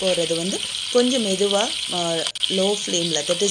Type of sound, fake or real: real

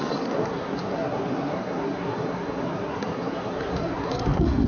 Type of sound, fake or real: fake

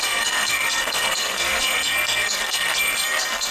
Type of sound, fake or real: fake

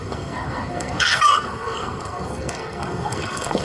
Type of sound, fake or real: fake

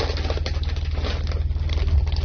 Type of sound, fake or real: real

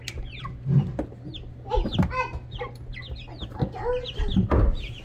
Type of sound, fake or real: real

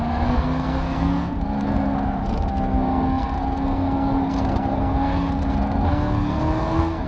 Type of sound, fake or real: fake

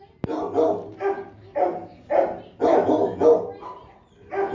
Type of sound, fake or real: real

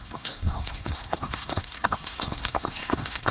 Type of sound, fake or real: fake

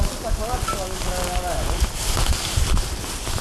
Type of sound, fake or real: real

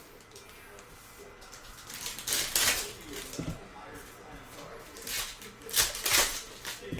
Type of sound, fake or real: real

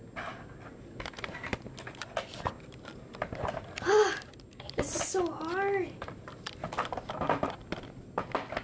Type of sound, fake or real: real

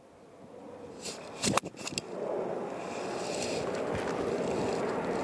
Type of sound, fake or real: real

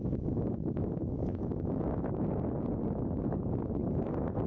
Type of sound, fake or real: real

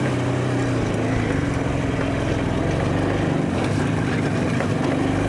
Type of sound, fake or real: real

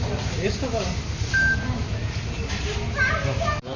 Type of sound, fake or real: real